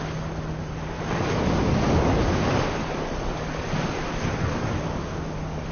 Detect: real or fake real